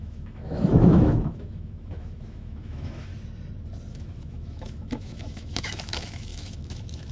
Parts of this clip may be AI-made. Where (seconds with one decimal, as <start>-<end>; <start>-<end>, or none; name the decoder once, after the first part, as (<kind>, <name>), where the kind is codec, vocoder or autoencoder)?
0.0-3.1 (autoencoder, DAC-VAE); 3.9-7.1